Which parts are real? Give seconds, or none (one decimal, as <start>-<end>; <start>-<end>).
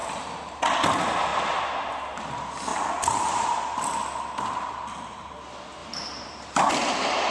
0.6-1.3; 2.2-2.7; 3.9-5.8; 6.7-7.3